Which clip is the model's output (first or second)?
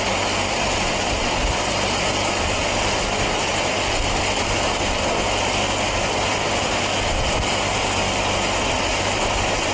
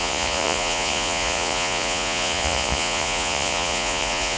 second